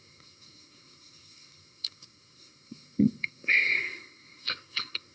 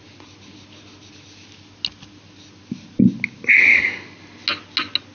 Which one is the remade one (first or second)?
first